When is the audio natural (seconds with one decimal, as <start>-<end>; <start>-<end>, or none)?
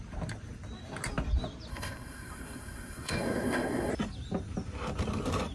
0.0-1.7; 3.9-5.5